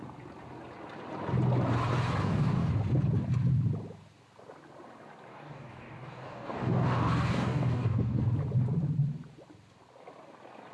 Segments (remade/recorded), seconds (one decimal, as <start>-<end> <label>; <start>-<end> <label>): 0.0-2.2 recorded; 2.2-2.7 remade; 2.7-5.3 recorded; 5.3-8.2 remade; 8.2-10.7 recorded